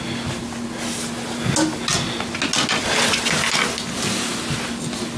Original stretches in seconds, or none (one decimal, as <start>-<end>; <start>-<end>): 0.0-5.2